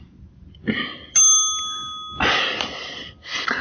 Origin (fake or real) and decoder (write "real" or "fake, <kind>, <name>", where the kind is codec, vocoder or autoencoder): real